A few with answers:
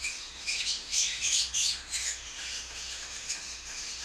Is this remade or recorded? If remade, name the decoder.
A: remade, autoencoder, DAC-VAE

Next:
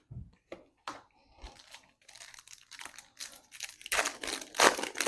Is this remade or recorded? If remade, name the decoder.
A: recorded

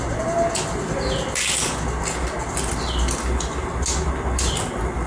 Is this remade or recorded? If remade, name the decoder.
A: recorded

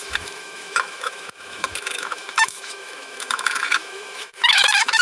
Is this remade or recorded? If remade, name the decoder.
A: remade, autoencoder, DAC-VAE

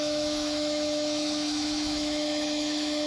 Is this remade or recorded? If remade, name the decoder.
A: remade, autoencoder, DAC-VAE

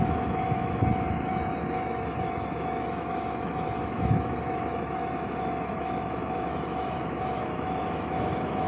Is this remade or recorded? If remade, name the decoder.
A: remade, autoencoder, DAC-VAE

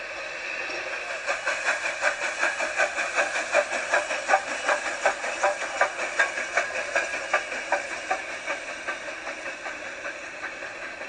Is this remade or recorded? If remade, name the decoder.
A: recorded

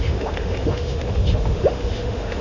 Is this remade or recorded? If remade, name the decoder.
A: remade, autoencoder, DAC-VAE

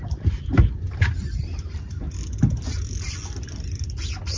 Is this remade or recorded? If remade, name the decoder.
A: recorded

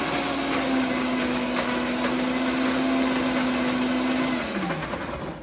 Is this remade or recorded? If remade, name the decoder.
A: recorded